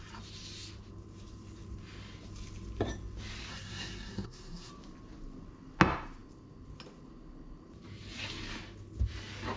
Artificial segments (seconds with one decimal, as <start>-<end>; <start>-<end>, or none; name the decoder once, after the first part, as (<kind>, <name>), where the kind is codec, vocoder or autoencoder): 3.5-4.7 (codec, SNAC)